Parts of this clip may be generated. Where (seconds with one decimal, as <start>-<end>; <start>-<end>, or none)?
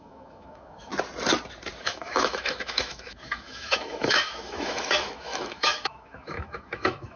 0.0-0.9; 1.8-7.2